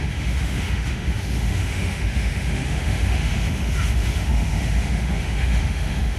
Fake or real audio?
fake